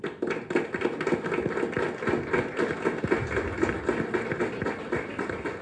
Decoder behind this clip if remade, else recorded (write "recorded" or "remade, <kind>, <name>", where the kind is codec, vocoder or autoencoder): recorded